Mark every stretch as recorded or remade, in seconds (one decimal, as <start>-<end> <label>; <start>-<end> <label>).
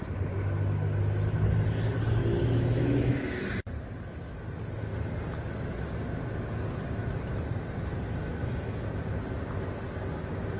0.0-2.2 recorded; 2.2-3.5 remade; 3.5-10.6 recorded